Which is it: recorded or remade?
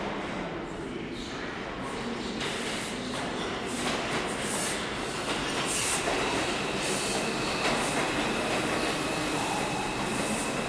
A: recorded